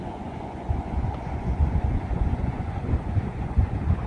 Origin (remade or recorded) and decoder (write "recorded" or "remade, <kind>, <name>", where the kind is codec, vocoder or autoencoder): remade, vocoder, Vocos